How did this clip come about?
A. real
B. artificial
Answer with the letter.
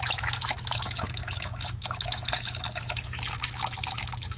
B